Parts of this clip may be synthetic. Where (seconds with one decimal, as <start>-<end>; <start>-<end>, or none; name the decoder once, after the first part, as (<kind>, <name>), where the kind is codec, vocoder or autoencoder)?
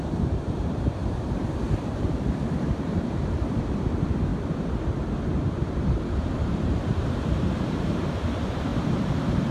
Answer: 0.0-4.3 (vocoder, BigVGAN v2); 5.4-9.5